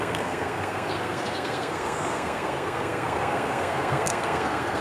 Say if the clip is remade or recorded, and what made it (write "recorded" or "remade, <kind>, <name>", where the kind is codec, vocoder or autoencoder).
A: remade, codec, SNAC